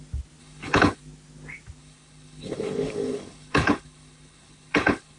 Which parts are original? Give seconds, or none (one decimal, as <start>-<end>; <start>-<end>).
0.0-0.4; 1.0-1.8